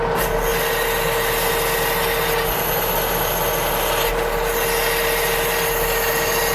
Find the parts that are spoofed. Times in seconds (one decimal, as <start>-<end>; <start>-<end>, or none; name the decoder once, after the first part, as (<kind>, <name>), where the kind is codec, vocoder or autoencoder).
none